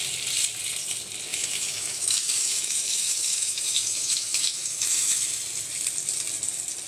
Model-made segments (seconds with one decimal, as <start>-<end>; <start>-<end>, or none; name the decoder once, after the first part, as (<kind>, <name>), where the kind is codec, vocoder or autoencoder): 1.3-5.4 (autoencoder, DAC-VAE)